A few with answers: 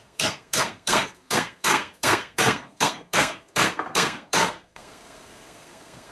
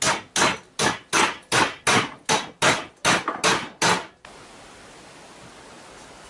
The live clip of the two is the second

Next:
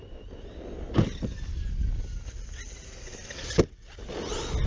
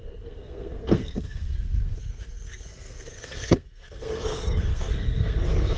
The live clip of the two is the first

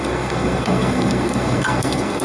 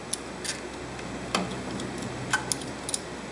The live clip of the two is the second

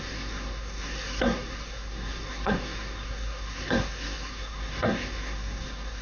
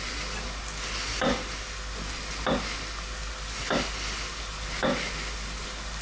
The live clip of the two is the second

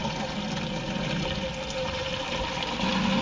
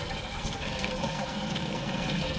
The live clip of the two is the first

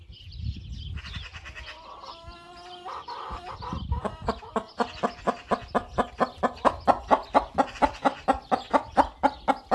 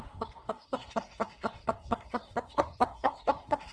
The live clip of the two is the first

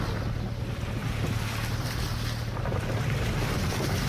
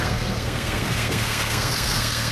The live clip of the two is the first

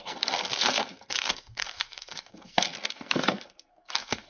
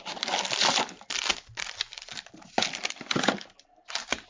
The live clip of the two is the second